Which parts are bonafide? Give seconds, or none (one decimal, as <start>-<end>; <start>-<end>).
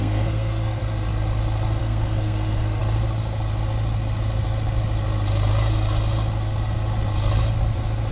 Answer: 0.8-1.8; 2.8-8.1